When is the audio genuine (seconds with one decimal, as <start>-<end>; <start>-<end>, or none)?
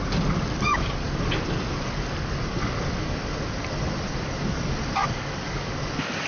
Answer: 0.0-5.0; 5.7-6.3